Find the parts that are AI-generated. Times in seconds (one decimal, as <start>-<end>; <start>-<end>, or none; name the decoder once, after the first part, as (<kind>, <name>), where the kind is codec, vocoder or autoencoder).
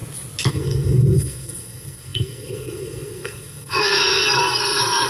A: 0.5-5.1 (codec, SNAC)